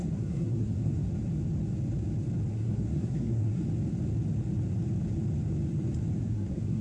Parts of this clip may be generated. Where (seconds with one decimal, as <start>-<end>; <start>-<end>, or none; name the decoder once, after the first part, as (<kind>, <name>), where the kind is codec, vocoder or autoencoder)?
0.0-1.1 (codec, SNAC); 2.5-3.6; 6.2-6.8